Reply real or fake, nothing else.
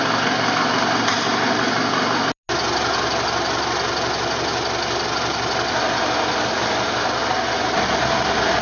real